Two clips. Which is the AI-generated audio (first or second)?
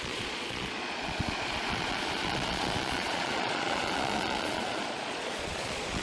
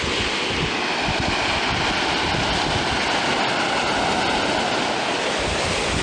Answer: first